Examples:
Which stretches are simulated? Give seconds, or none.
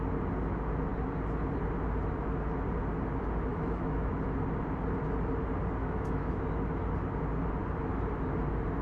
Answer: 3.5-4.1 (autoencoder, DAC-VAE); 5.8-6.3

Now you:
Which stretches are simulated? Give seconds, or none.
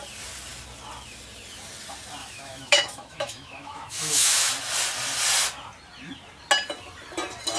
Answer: 2.2-4.5 (autoencoder, DAC-VAE)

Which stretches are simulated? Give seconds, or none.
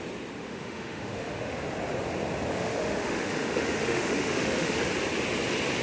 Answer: 0.4-1.5 (autoencoder, DAC-VAE); 2.5-4.8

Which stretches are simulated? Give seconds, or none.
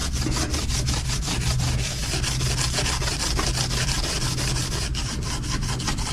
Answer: none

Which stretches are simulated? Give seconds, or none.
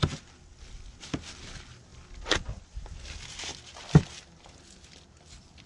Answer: none